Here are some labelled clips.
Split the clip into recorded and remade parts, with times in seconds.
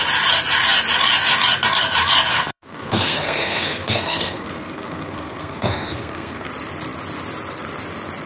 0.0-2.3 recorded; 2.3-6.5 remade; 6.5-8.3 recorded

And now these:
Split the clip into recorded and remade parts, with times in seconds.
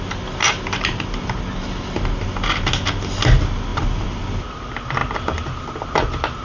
0.0-3.7 recorded; 3.7-4.2 remade; 4.2-5.0 recorded; 5.0-6.4 remade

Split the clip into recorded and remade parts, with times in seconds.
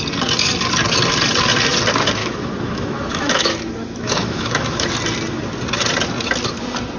0.0-2.2 recorded; 2.2-4.9 remade; 4.9-7.0 recorded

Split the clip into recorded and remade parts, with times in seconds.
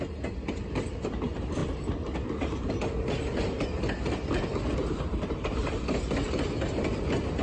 0.0-4.8 recorded; 4.8-5.7 remade; 5.7-7.4 recorded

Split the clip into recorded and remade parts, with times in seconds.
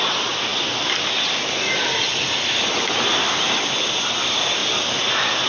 0.0-5.5 recorded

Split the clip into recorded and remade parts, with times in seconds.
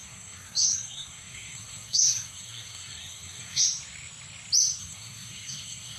0.0-3.6 remade; 3.6-4.8 recorded; 4.8-6.0 remade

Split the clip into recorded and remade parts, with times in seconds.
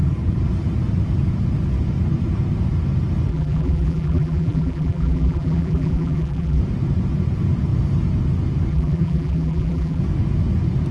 0.0-3.3 recorded; 3.3-6.6 remade; 6.6-8.7 recorded; 8.7-10.0 remade; 10.0-10.9 recorded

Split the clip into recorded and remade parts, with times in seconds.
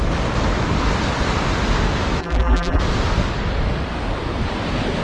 0.0-2.2 recorded; 2.2-2.8 remade; 2.8-5.0 recorded